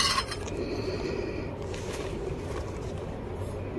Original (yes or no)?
yes